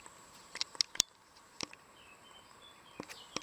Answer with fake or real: fake